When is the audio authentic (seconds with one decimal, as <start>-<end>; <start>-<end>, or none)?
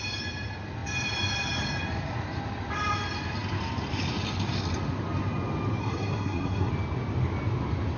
0.0-5.8; 6.7-8.0